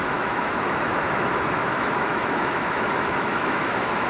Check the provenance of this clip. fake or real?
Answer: fake